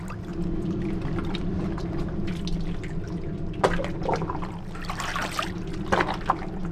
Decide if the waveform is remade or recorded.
recorded